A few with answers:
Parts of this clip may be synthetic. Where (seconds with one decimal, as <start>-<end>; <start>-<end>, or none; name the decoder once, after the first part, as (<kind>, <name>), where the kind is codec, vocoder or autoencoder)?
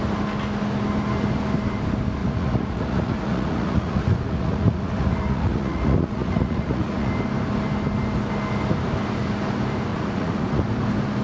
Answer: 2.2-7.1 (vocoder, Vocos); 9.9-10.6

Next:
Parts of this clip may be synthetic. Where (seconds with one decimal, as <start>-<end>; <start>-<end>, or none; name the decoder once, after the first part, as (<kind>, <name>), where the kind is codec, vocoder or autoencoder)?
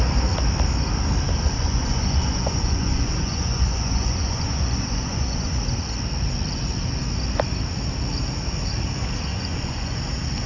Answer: 1.6-5.6 (vocoder, Vocos); 9.3-10.0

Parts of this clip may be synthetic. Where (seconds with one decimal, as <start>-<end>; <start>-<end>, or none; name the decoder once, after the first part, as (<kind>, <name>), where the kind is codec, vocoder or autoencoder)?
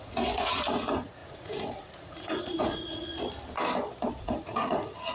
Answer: 0.0-3.1 (vocoder, Vocos); 4.2-5.1